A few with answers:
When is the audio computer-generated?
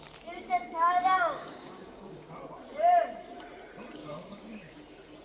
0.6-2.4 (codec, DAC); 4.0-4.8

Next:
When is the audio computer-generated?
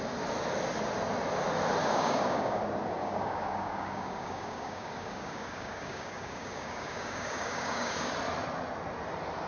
1.8-2.6 (codec, DAC); 3.0-8.1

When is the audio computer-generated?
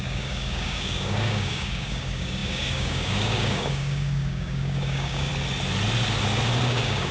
0.0-5.3 (codec, DAC); 6.6-7.1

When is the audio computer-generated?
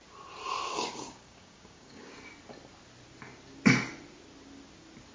0.7-2.1 (codec, DAC)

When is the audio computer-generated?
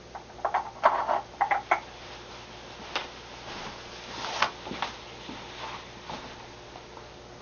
none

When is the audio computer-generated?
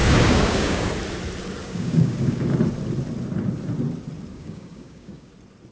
0.0-0.9 (codec, DAC); 1.6-2.4; 4.3-5.3